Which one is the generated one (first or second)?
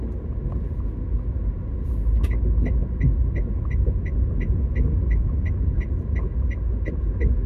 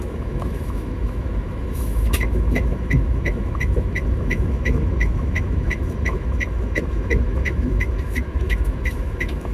second